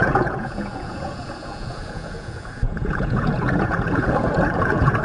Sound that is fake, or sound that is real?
fake